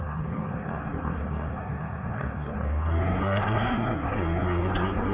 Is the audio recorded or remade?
remade